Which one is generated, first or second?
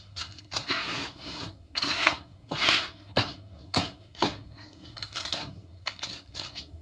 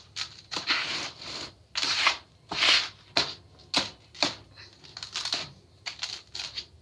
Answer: first